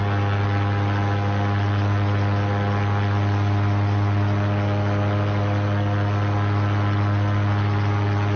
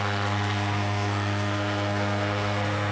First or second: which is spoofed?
second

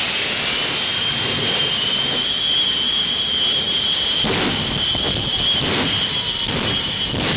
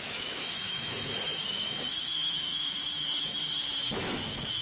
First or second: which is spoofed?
second